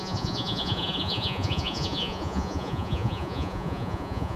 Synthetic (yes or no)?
yes